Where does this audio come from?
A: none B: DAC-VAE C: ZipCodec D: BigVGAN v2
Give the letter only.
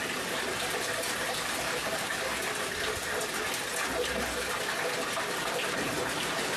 A